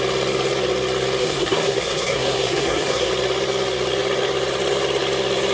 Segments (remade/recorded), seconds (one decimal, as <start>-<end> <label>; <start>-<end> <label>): 0.0-1.2 recorded; 1.2-3.1 remade; 3.1-5.5 recorded